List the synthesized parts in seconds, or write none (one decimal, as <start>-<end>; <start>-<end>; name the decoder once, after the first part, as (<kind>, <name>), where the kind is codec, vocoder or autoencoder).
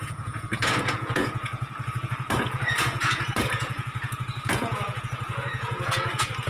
0.0-6.5 (vocoder, Vocos)